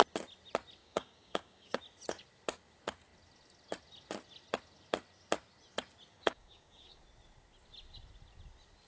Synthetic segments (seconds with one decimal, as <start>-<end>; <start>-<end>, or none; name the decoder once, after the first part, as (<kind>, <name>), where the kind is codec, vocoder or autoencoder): 0.8-1.8 (codec, DAC); 6.1-7.0